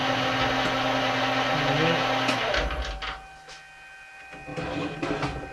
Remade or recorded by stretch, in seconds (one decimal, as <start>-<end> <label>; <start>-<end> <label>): 0.0-5.5 recorded